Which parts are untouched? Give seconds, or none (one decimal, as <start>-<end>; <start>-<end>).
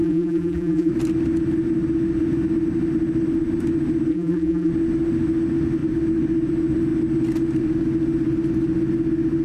0.9-4.1; 4.7-9.4